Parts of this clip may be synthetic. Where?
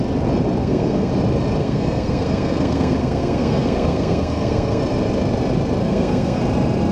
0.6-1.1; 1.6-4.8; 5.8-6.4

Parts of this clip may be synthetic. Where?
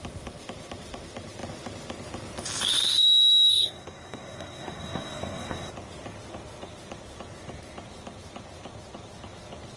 3.5-5.7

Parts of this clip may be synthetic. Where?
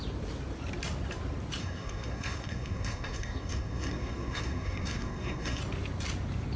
1.6-5.6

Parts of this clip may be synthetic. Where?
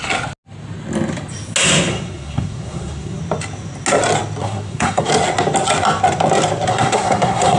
1.9-3.2; 4.4-5.1; 6.7-7.6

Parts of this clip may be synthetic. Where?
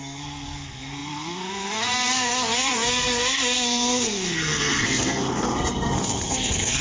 0.0-6.8